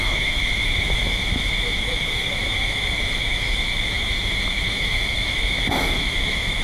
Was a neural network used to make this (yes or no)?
yes